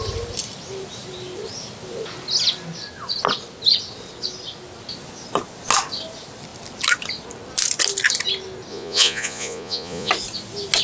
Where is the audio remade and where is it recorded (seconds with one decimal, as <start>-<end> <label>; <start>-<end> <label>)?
0.0-8.7 recorded; 8.7-10.1 remade; 10.1-10.8 recorded